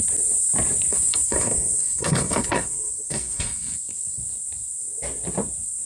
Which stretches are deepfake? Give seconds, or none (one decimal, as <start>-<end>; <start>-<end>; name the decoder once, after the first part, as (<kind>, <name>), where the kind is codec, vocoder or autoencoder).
0.9-4.2 (codec, SNAC)